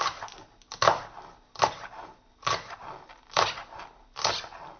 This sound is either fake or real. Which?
real